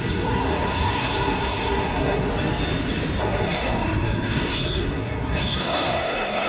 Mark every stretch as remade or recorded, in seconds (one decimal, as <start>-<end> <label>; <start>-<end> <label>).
0.0-2.3 remade; 2.3-3.2 recorded; 3.2-6.5 remade